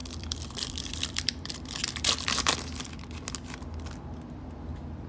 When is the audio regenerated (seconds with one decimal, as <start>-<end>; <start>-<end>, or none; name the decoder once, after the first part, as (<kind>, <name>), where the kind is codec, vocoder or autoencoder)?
0.0-2.5 (vocoder, BigVGAN v2)